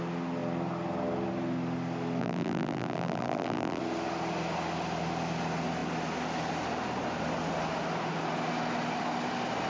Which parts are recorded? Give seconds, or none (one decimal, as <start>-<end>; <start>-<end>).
0.0-2.2; 3.8-9.7